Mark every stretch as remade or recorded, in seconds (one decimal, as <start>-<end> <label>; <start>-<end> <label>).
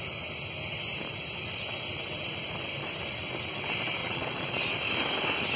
0.0-4.0 recorded; 4.0-4.6 remade; 4.6-5.6 recorded